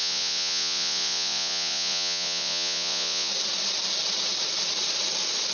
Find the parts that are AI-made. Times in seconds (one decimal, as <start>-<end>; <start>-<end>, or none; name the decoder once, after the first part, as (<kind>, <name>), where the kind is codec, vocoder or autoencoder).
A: 0.0-3.3 (vocoder, Vocos)